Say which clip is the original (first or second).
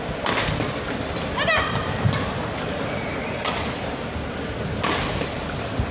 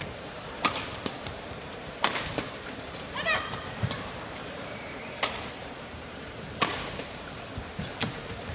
first